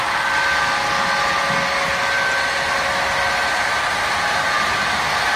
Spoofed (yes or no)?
no